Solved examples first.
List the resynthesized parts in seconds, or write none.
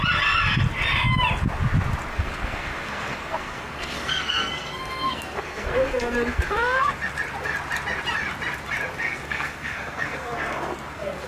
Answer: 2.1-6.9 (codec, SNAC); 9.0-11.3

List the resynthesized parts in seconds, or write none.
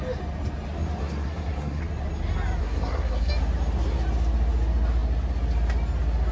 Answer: 1.0-1.8 (codec, SNAC); 2.6-3.3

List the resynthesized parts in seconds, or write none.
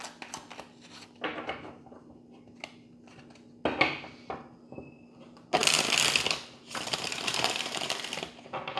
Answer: none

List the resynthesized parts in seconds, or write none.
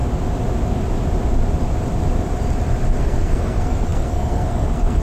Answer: 3.0-5.0 (codec, SNAC)